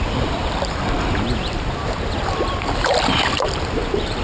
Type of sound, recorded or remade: remade